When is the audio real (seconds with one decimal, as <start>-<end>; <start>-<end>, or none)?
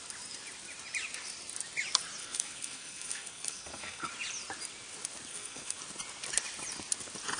0.0-2.2; 4.1-5.3; 5.8-7.4